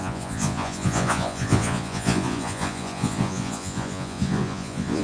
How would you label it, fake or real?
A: fake